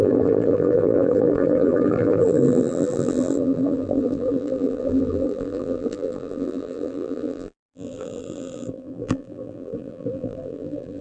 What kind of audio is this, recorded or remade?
remade